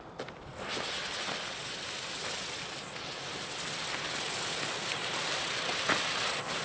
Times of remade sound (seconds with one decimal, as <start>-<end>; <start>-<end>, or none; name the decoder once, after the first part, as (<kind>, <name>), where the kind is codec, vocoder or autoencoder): none